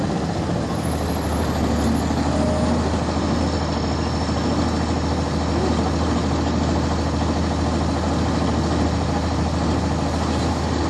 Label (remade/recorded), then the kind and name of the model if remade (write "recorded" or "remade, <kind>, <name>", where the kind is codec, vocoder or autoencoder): recorded